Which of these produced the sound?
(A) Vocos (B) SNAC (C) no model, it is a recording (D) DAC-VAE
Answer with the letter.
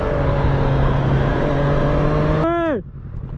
C